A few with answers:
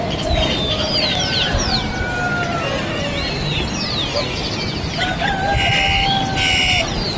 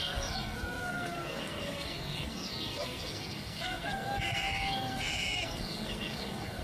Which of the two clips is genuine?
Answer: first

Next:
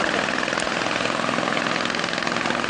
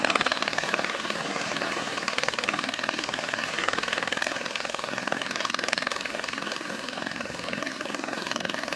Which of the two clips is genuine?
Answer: first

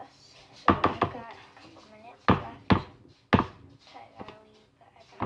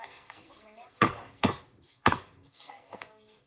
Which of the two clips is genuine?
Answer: first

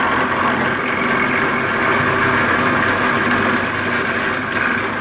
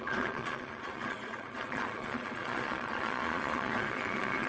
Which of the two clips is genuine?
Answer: first